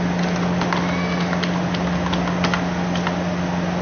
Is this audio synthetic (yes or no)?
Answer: no